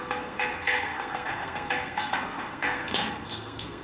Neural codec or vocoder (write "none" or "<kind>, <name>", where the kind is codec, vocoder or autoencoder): codec, SNAC